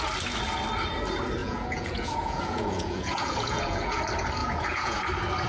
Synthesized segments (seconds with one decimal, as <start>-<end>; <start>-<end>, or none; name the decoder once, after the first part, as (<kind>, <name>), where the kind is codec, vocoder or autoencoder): 1.4-4.0 (vocoder, Vocos); 4.4-5.0